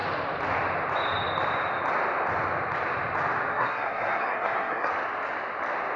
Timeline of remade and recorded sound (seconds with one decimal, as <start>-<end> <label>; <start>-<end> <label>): 0.0-3.5 recorded; 3.5-4.9 remade; 4.9-6.0 recorded